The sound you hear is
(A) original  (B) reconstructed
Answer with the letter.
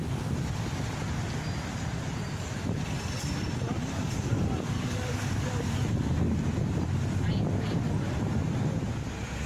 A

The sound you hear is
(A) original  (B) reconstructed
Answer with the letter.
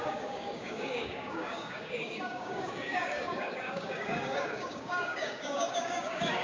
B